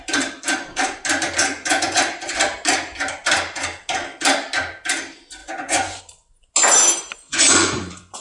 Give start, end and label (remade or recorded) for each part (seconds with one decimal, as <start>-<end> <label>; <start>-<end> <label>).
0.0-1.4 recorded; 1.4-2.0 remade; 2.0-5.4 recorded; 5.4-6.0 remade; 6.0-7.1 recorded; 7.1-8.2 remade